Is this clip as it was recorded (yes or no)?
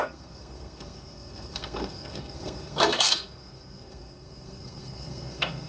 no